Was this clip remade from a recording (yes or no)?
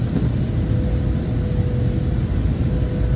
no